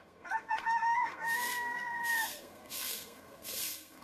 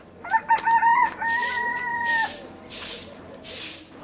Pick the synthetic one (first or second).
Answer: first